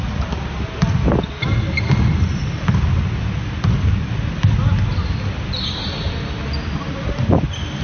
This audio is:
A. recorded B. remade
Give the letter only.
A